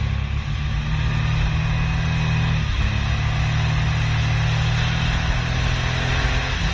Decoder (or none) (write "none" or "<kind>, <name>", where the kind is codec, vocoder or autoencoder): none